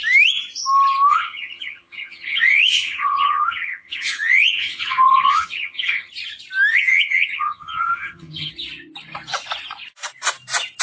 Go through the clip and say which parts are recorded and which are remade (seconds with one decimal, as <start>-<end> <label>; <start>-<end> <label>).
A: 0.0-1.1 recorded; 1.1-6.1 remade; 6.1-6.7 recorded; 6.7-8.5 remade; 8.5-10.8 recorded

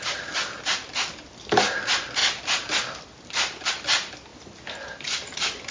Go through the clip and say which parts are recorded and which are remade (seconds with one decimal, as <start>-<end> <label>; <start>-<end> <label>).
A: 0.0-5.7 recorded

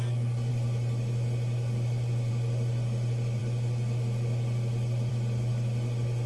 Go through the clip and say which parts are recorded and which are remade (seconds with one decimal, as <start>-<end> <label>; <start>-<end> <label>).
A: 0.0-6.3 recorded

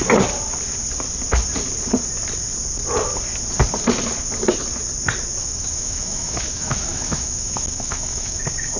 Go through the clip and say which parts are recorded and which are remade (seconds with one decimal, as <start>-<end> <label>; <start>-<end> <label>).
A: 0.0-5.4 recorded; 5.4-8.4 remade; 8.4-8.8 recorded

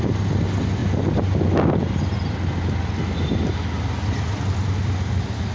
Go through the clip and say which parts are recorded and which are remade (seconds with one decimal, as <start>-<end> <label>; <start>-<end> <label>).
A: 0.0-5.5 recorded

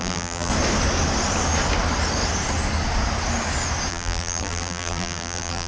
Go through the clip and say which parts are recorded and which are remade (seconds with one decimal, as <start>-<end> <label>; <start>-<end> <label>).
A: 0.0-0.5 remade; 0.5-3.9 recorded; 3.9-5.7 remade

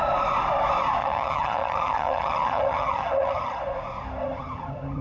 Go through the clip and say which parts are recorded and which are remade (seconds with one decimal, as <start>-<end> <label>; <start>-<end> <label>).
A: 0.0-1.0 recorded; 1.0-3.6 remade; 3.6-4.2 recorded; 4.2-5.0 remade